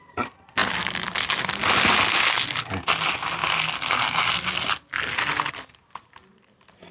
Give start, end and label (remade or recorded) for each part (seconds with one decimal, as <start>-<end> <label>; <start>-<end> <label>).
0.0-6.9 recorded